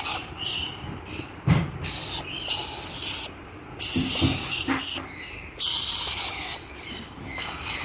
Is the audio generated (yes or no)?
no